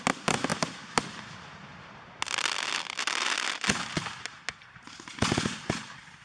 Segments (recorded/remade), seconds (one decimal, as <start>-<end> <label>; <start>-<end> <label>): 0.0-6.2 recorded